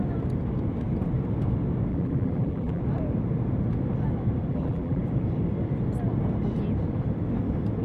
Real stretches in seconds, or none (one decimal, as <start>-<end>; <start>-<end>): 0.0-1.9; 2.8-4.5; 5.0-7.8